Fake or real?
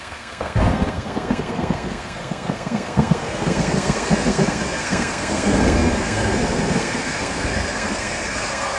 fake